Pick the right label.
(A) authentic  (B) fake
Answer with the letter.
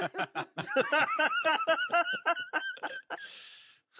B